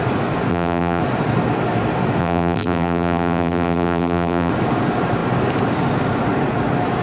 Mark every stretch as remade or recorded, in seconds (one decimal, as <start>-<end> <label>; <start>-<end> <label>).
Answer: 0.0-0.5 recorded; 0.5-1.0 remade; 1.0-2.2 recorded; 2.2-4.5 remade; 4.5-7.0 recorded